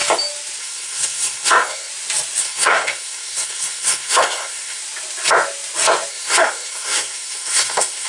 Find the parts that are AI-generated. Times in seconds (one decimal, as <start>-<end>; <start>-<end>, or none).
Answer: 0.6-1.9; 2.4-4.8; 6.1-8.1